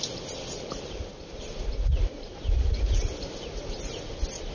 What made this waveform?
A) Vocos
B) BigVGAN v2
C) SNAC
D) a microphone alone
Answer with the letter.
D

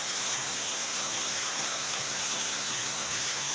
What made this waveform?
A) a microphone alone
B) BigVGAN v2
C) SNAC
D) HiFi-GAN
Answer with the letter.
C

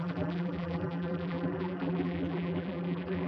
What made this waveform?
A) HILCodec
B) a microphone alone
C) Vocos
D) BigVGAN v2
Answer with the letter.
D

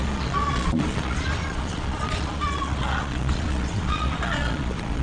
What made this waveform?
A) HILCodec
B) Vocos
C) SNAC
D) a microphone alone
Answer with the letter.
B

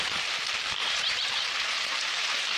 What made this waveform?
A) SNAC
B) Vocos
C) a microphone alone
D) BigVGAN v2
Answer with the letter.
D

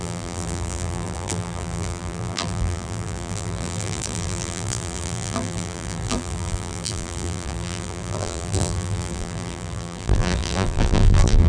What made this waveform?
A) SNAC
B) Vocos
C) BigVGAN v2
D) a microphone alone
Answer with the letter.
C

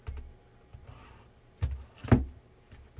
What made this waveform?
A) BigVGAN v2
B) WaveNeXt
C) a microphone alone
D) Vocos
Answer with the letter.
C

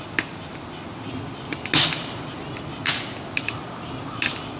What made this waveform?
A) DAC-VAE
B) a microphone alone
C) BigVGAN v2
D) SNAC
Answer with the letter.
B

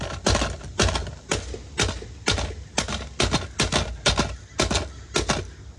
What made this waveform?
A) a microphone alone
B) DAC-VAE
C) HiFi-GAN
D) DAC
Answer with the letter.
A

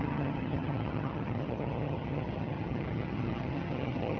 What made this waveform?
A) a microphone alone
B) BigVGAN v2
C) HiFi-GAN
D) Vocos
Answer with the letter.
C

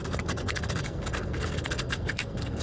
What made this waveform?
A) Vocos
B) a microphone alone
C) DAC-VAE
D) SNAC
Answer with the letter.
D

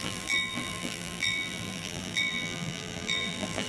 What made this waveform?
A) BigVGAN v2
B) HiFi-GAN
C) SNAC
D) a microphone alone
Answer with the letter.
A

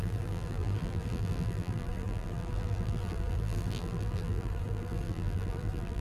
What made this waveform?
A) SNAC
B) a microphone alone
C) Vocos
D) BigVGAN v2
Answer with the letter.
D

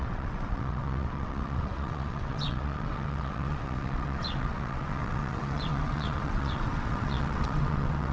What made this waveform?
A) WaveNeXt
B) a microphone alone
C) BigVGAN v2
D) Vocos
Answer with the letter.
A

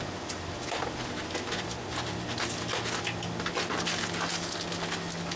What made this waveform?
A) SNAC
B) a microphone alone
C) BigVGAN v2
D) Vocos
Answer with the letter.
C